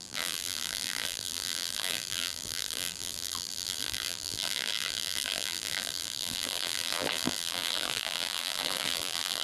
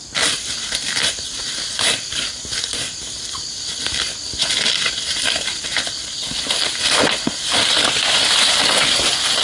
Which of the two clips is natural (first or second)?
second